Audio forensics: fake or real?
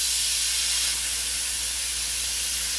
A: real